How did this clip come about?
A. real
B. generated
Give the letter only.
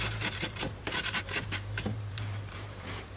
B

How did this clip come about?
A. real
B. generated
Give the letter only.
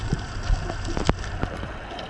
A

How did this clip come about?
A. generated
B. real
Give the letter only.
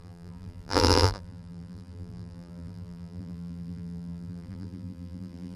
A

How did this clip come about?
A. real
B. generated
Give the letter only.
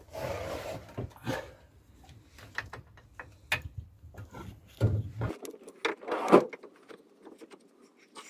A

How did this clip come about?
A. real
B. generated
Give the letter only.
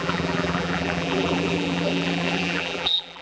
B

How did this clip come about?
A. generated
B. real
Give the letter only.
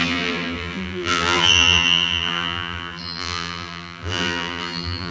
A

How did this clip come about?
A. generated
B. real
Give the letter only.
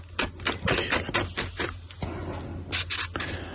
B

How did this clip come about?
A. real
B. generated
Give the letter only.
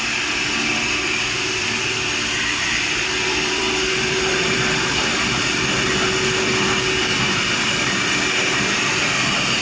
B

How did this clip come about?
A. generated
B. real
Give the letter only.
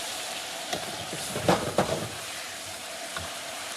A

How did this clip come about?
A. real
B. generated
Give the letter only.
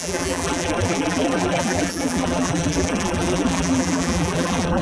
B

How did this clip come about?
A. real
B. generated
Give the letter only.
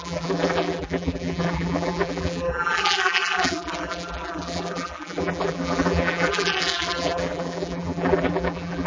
B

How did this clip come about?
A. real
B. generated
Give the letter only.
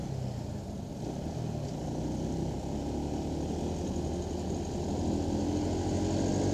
A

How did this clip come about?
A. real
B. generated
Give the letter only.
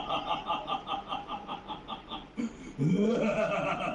B